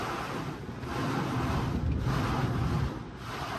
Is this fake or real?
real